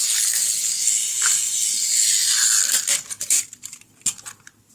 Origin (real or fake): real